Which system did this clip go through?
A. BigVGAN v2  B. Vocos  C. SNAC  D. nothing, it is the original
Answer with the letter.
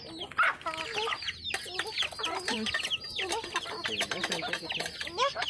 D